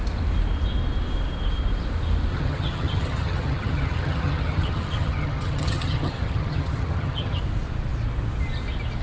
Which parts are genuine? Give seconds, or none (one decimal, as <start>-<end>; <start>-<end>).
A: 0.0-2.3; 7.4-9.0